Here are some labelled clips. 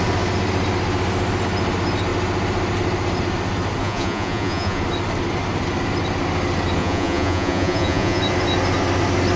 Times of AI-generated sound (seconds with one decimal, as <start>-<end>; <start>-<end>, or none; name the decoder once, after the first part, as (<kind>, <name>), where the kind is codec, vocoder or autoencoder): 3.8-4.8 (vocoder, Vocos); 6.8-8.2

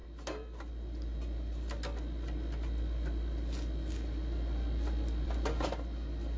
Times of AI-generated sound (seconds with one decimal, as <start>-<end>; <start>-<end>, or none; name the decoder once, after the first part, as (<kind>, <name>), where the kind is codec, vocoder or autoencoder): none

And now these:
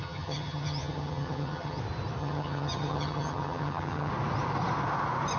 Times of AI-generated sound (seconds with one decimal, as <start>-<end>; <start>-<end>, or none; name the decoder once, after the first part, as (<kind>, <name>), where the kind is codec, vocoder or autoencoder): 0.0-1.8 (vocoder, HiFi-GAN); 2.2-4.1